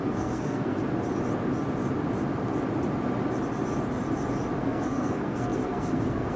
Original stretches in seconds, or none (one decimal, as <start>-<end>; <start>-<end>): 0.8-4.6